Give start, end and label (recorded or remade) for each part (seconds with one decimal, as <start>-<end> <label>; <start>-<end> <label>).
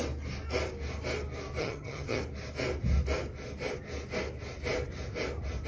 0.0-1.6 recorded; 1.6-2.2 remade; 2.2-5.7 recorded